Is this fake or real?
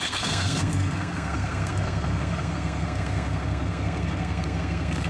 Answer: fake